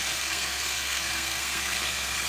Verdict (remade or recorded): remade